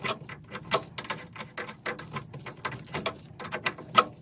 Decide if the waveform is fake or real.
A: real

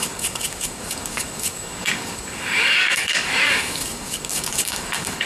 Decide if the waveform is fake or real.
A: fake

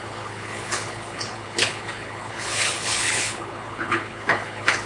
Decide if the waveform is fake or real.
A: fake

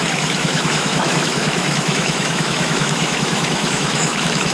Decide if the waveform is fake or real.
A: fake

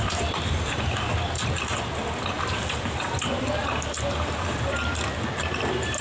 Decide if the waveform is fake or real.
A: real